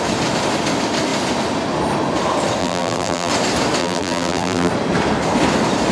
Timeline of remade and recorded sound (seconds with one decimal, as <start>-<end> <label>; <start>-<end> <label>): 0.0-2.6 recorded; 2.6-3.3 remade; 3.3-3.8 recorded; 3.8-4.7 remade; 4.7-5.9 recorded